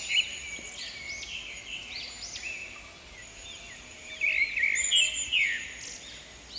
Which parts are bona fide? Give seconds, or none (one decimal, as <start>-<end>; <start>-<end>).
0.0-6.6